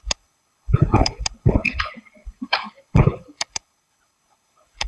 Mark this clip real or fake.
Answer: fake